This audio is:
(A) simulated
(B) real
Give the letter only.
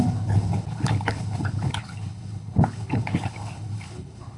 A